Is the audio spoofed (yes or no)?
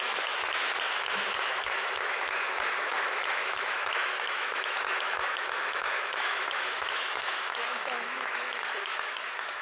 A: yes